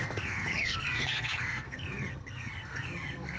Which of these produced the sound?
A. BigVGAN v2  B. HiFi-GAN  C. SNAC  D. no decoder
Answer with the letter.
C